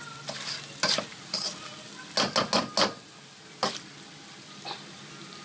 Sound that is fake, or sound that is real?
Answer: real